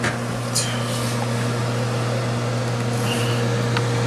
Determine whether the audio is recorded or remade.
recorded